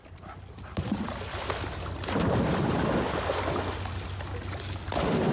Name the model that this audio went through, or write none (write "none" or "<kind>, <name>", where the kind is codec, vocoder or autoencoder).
none